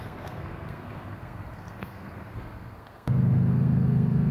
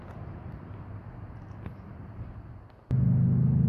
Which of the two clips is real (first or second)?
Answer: second